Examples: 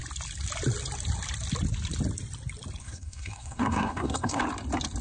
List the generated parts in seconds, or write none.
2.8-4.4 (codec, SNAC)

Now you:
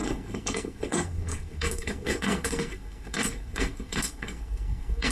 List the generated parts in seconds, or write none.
0.0-5.1 (codec, SNAC)

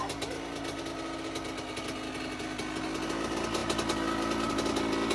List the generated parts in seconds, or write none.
none

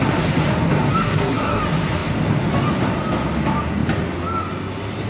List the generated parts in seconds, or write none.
1.0-1.6 (codec, SNAC)

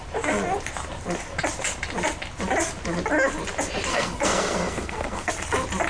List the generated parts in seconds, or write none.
3.9-5.3 (codec, SNAC)

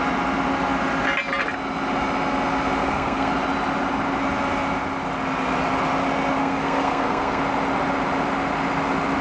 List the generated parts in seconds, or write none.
2.8-3.3 (codec, SNAC); 6.4-7.4

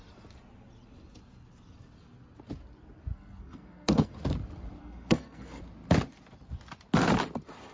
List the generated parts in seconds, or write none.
3.1-4.1 (codec, SNAC); 4.8-5.6